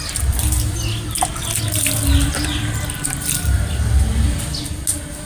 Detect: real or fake real